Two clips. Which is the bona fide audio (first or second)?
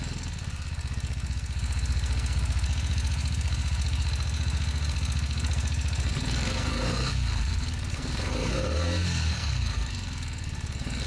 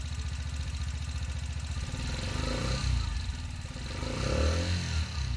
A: second